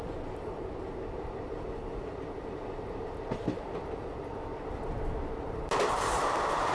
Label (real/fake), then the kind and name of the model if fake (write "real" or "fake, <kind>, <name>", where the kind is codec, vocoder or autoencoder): real